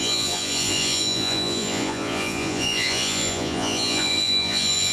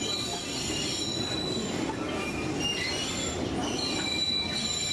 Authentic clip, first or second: second